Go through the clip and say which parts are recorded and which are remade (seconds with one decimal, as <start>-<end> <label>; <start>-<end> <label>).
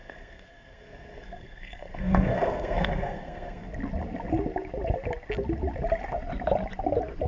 0.0-3.7 remade; 3.7-7.3 recorded